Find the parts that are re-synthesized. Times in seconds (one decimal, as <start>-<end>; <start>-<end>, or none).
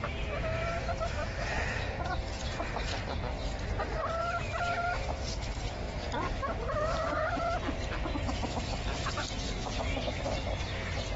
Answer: 9.6-10.2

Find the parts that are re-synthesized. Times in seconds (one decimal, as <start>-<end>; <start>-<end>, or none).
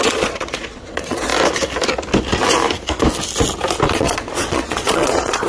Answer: 0.0-1.3; 3.9-5.5